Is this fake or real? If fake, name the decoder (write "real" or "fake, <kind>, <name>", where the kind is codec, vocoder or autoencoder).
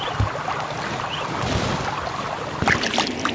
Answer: real